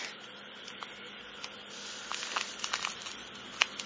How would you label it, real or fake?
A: real